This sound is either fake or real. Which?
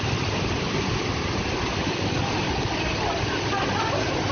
real